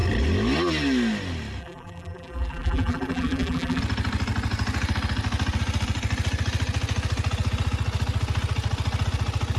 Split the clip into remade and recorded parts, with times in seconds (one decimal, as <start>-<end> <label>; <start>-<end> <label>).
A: 0.0-1.6 recorded; 1.6-3.8 remade; 3.8-9.6 recorded